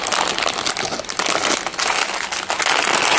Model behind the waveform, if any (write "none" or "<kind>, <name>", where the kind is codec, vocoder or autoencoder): none